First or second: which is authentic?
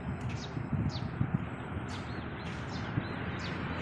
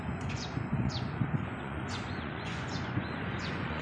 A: first